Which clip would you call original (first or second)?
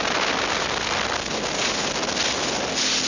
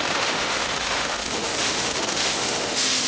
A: first